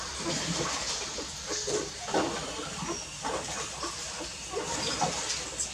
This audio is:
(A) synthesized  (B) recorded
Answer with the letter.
B